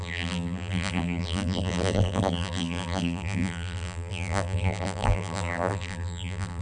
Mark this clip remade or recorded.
remade